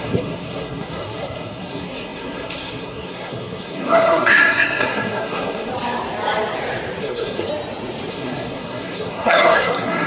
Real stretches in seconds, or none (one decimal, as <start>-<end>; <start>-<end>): 5.7-7.0; 7.5-8.1